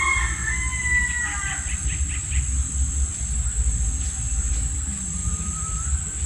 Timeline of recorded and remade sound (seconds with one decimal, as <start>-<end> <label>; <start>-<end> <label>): 0.0-6.3 recorded

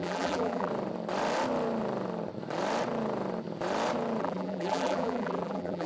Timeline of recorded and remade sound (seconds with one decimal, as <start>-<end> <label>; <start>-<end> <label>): 0.0-0.7 remade; 0.7-4.2 recorded; 4.2-5.9 remade

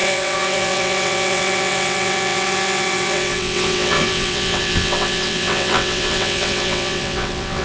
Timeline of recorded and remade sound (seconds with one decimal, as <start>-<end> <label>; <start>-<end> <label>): 0.0-7.6 remade

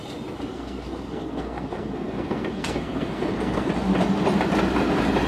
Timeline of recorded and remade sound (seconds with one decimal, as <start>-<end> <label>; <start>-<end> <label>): 0.0-0.5 recorded; 0.5-3.7 remade; 3.7-5.3 recorded